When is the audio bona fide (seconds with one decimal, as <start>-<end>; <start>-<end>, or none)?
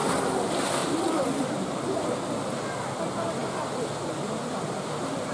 0.0-0.8; 2.1-5.3